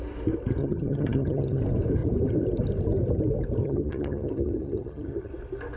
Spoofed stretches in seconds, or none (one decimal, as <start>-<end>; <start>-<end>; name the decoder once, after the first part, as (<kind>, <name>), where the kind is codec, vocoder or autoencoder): 0.6-1.6 (vocoder, HiFi-GAN); 3.6-5.3